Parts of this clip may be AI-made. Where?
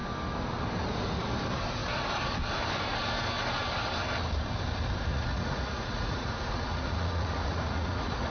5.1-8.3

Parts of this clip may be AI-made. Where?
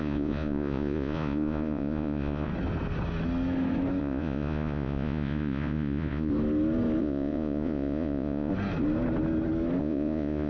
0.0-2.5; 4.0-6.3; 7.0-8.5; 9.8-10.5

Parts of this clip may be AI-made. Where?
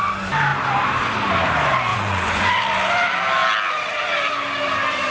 1.9-2.5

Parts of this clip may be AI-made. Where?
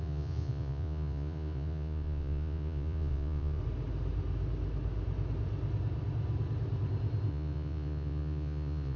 0.0-3.6; 7.3-9.0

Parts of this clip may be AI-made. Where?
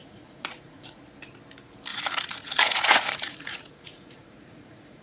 0.0-1.0; 1.9-5.0